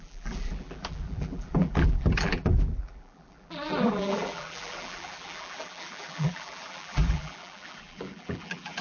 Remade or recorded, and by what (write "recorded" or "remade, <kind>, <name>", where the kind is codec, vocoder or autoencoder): remade, vocoder, BigVGAN v2